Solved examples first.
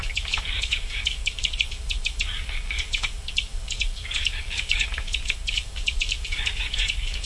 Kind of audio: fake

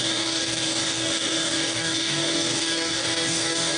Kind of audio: fake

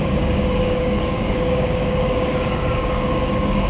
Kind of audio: fake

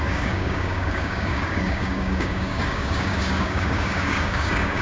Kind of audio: fake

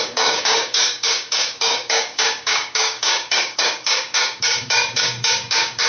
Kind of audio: fake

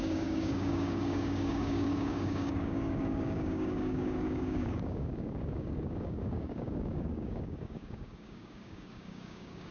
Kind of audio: fake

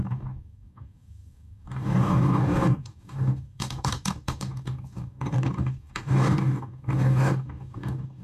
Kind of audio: fake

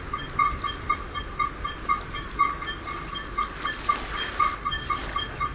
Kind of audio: real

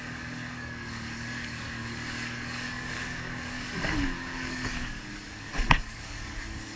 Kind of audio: fake